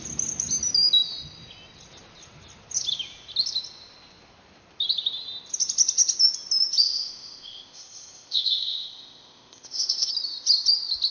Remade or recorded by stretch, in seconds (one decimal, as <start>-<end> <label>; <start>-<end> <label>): 0.0-6.8 recorded; 6.8-10.1 remade; 10.1-11.1 recorded